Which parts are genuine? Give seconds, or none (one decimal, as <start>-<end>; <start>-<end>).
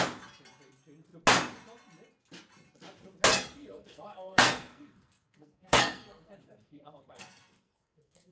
0.0-3.3